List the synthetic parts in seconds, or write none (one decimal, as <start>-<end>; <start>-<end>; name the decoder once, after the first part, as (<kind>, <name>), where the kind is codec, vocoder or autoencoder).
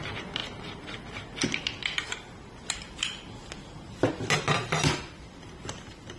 none